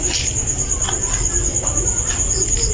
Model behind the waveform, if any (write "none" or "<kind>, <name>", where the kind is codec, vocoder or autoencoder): none